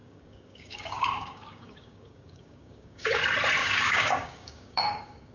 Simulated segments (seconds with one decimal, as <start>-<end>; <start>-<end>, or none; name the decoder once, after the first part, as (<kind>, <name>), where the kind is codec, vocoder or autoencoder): 0.0-3.2 (codec, DAC); 3.6-5.3